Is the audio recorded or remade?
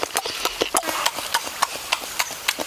recorded